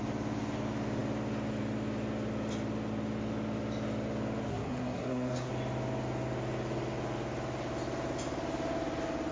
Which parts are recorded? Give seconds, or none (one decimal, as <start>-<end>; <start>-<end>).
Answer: 0.0-4.5; 5.5-9.3